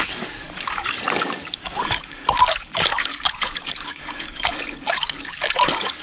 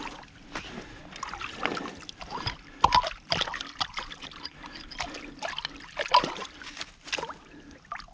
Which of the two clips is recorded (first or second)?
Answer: second